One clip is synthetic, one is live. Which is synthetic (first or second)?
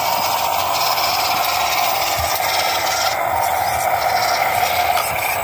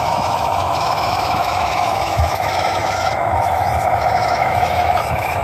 second